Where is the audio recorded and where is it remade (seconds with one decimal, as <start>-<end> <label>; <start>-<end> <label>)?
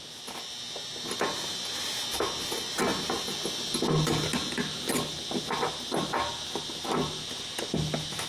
0.0-8.3 recorded